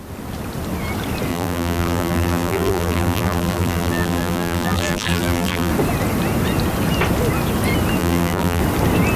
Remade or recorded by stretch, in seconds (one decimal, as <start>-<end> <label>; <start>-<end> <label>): 0.0-1.3 recorded; 1.3-5.7 remade; 5.7-8.0 recorded; 8.0-8.6 remade; 8.6-9.2 recorded